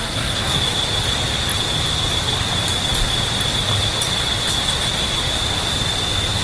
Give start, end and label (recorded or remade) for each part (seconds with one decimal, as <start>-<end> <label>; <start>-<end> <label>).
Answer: 0.0-0.6 remade; 0.6-6.4 recorded

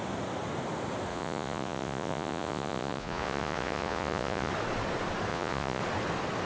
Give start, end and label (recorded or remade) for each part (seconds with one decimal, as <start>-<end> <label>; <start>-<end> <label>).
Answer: 0.0-1.1 recorded; 1.1-4.5 remade; 4.5-5.3 recorded; 5.3-5.8 remade; 5.8-6.5 recorded

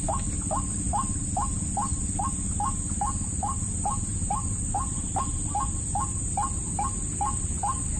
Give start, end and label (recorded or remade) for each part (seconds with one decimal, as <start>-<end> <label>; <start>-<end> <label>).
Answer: 0.0-8.0 recorded

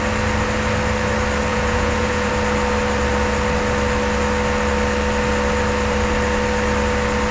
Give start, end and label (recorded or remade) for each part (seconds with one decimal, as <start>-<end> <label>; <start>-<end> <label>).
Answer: 0.0-1.5 recorded; 1.5-2.3 remade; 2.3-7.3 recorded

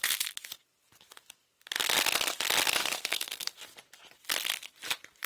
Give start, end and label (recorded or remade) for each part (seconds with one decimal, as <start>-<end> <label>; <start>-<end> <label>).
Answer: 0.0-2.8 recorded; 2.8-3.5 remade; 3.5-5.3 recorded

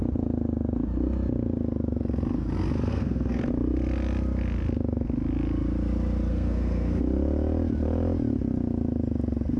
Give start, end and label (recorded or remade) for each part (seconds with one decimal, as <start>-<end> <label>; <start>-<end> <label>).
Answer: 0.0-2.9 recorded; 2.9-3.5 remade; 3.5-6.3 recorded; 6.3-7.0 remade; 7.0-9.6 recorded